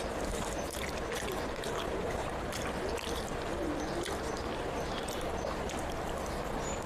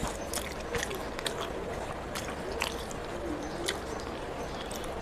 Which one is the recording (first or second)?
second